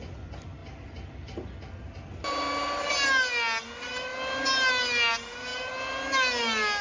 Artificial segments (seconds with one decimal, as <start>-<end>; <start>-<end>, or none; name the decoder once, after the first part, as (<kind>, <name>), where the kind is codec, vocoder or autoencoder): none